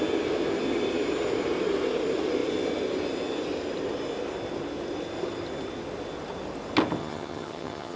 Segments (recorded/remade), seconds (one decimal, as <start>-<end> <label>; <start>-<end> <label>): 0.0-7.0 recorded; 7.0-8.0 remade